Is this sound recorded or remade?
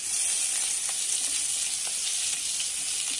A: recorded